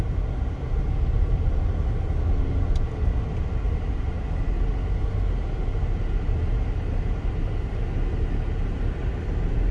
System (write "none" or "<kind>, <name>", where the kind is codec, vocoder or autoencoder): none